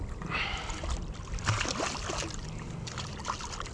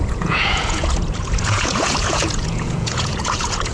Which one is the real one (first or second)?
first